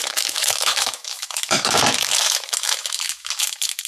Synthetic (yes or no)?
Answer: yes